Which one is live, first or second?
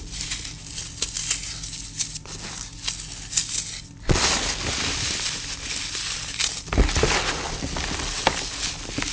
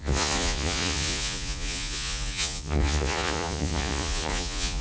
first